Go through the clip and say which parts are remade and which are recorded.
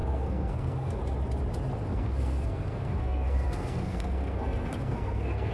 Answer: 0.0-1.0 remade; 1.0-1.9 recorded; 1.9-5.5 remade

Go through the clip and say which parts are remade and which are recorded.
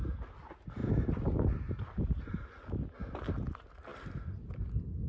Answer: 0.0-5.1 recorded